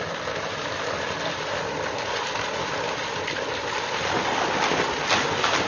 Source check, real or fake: real